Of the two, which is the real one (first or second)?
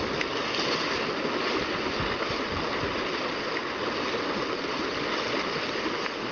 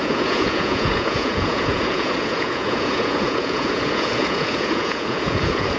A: first